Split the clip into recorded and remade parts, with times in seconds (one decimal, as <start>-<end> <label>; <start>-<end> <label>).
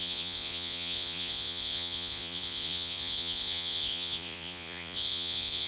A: 0.0-5.7 remade